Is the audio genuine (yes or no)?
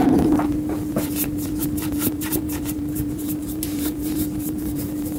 no